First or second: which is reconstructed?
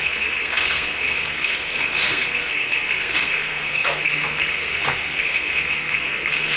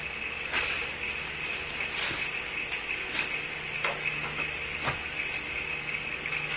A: first